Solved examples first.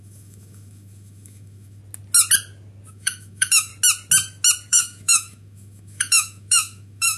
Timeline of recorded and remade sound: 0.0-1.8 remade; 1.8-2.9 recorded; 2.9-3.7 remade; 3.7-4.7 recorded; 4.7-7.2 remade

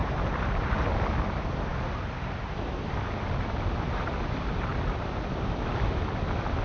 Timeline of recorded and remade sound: 0.0-0.7 remade; 0.7-4.7 recorded; 4.7-6.1 remade; 6.1-6.6 recorded

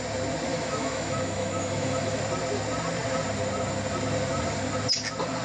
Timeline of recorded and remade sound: 0.0-0.5 recorded; 0.5-2.2 remade; 2.2-5.4 recorded

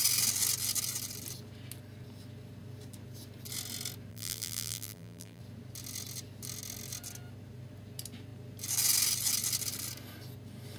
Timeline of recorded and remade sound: 0.0-4.1 recorded; 4.1-5.4 remade; 5.4-10.8 recorded

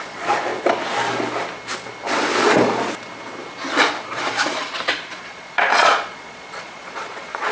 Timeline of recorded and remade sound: 0.0-0.5 remade; 0.5-4.9 recorded; 4.9-7.5 remade